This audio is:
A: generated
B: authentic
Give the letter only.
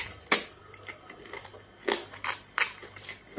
B